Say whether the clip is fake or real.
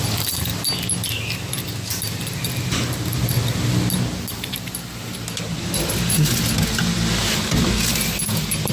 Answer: real